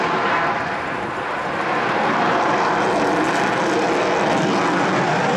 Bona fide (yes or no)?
yes